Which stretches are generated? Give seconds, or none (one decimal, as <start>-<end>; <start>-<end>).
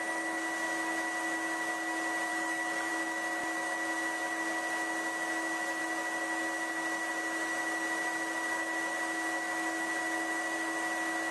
2.3-2.9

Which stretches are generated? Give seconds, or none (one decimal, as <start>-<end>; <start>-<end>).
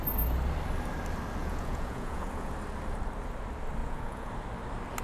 1.4-2.5; 3.8-4.3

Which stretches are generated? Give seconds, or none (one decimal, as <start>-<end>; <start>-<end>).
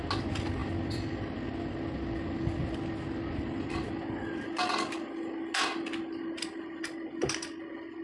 none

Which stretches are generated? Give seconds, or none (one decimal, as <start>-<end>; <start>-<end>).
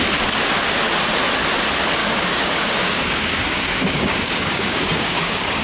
2.0-5.6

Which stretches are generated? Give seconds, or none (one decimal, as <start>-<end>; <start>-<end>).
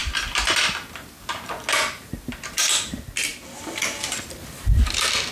none